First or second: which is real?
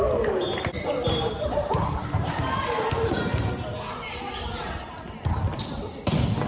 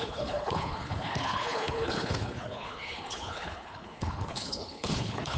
first